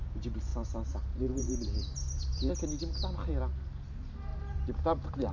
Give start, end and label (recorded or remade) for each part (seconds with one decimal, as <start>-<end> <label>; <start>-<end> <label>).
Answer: 0.0-0.5 recorded; 0.5-2.5 remade; 2.5-4.3 recorded; 4.3-5.3 remade